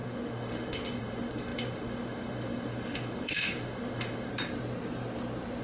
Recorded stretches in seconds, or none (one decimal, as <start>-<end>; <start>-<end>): 4.3-5.6